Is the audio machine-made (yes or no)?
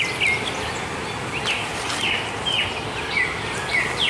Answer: no